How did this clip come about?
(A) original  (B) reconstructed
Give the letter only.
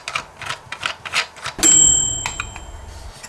A